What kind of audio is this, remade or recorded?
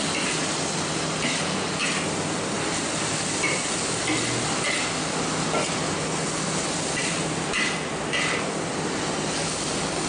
recorded